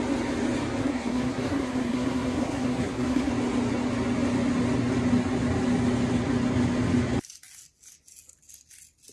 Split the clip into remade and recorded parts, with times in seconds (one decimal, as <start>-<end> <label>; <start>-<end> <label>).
0.0-0.8 recorded; 0.8-3.3 remade; 3.3-9.1 recorded